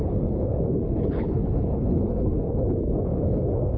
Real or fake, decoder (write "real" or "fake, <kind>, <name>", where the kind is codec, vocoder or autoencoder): fake, codec, HILCodec